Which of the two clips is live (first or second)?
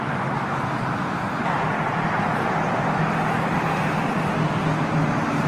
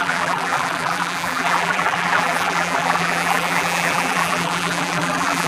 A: first